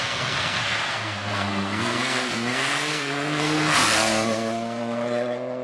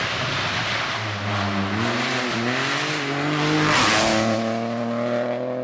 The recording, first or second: second